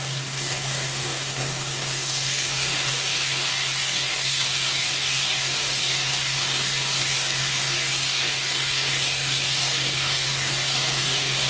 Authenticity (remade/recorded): remade